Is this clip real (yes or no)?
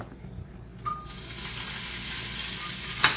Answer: yes